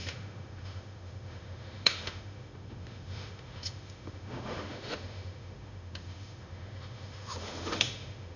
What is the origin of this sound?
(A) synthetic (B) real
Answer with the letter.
A